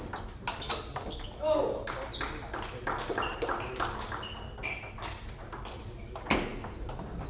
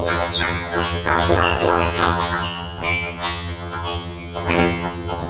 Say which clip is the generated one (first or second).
second